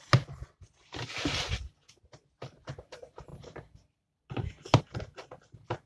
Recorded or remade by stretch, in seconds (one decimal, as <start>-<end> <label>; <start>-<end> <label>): 0.0-0.4 recorded; 0.4-1.9 remade; 1.9-3.3 recorded; 3.3-4.8 remade; 4.8-5.9 recorded